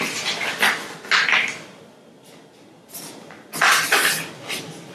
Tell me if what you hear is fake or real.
real